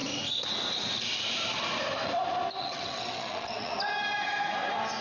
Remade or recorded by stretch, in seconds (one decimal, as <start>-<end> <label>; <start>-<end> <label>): 0.0-2.6 recorded; 2.6-3.7 remade; 3.7-5.0 recorded